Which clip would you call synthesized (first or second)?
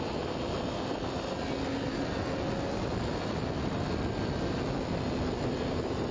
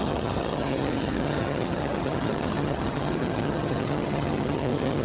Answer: second